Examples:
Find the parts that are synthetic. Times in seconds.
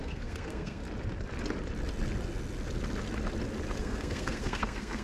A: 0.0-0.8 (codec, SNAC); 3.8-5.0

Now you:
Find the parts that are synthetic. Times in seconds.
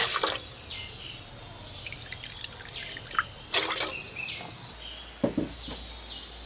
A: none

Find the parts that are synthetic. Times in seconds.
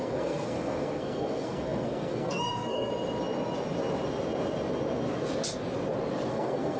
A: 0.0-2.9 (codec, SNAC); 6.3-6.8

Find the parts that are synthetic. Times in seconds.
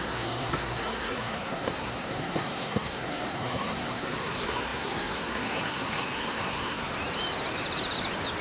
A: 0.0-6.9 (codec, SNAC)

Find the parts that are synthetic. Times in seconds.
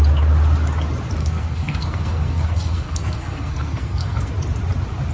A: 1.2-4.3 (codec, SNAC)